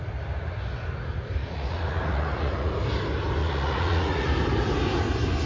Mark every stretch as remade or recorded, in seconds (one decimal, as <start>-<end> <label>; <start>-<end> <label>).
0.0-1.4 recorded; 1.4-2.7 remade; 2.7-3.4 recorded; 3.4-4.3 remade; 4.3-5.5 recorded